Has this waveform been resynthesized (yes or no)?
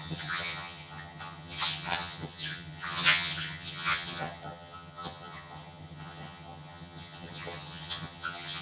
yes